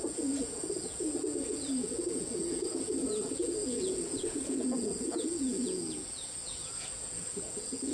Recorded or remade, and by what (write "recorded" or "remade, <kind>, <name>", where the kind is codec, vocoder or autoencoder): remade, vocoder, Vocos